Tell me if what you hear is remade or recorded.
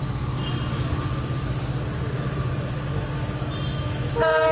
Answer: recorded